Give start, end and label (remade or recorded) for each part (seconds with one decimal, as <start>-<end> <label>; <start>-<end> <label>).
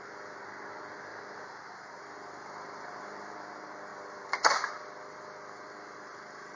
0.0-1.1 recorded; 1.1-2.0 remade; 2.0-6.6 recorded